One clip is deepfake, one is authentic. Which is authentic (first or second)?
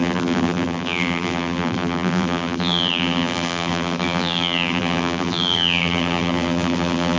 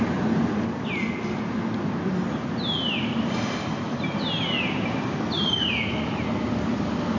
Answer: second